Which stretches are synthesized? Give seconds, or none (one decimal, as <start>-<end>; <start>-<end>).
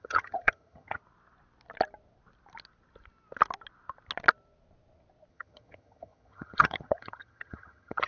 0.0-1.0; 5.3-8.1